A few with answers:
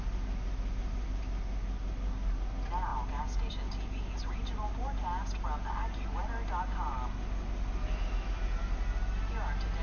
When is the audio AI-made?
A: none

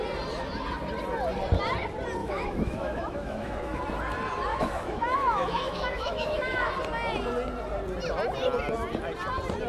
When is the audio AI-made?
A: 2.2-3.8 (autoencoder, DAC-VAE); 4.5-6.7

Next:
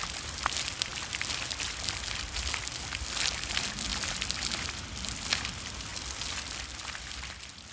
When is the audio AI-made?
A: none